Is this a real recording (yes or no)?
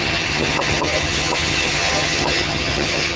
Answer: no